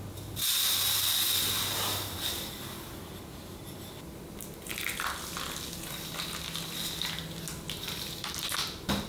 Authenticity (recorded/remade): recorded